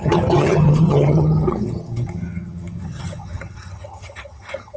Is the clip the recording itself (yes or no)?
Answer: no